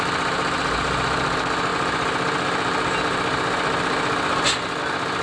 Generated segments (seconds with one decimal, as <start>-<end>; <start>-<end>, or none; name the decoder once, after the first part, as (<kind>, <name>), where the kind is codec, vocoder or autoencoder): none